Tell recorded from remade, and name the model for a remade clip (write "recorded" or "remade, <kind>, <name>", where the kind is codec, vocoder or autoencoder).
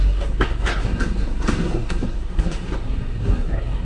remade, codec, SNAC